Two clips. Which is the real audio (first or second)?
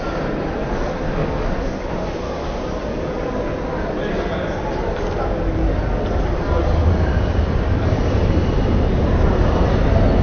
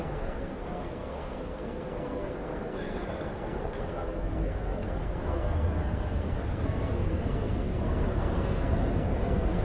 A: first